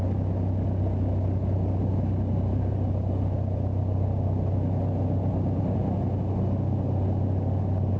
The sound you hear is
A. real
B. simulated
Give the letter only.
A